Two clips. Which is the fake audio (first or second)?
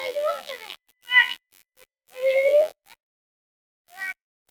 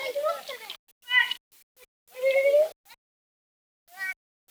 first